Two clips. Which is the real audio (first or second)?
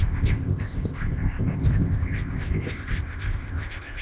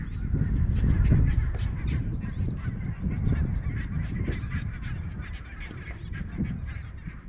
second